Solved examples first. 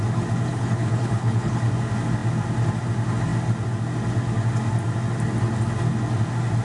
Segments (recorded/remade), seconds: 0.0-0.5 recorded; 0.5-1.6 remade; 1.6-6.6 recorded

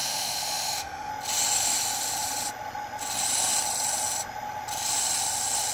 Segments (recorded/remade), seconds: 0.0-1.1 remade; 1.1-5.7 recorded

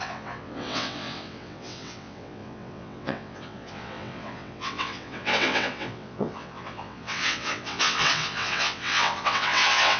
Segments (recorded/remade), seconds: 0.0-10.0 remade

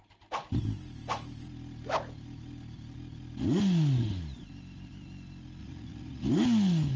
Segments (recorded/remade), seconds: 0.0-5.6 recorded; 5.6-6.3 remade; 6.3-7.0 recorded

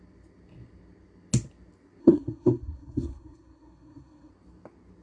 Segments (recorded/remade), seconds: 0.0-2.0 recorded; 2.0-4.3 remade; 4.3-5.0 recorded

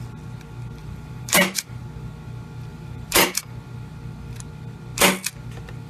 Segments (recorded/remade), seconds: 0.0-0.8 recorded; 0.8-1.8 remade; 1.8-2.7 recorded; 2.7-3.4 remade; 3.4-5.9 recorded

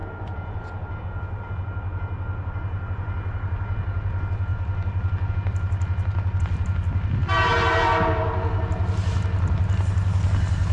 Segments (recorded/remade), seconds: 0.0-4.5 recorded; 4.5-5.3 remade; 5.3-10.7 recorded

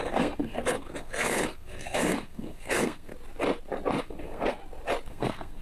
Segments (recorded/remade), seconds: 0.0-3.1 remade; 3.1-4.0 recorded; 4.0-4.6 remade; 4.6-5.1 recorded; 5.1-5.6 remade